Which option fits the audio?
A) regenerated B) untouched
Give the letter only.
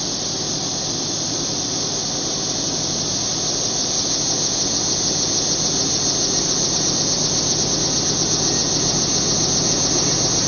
B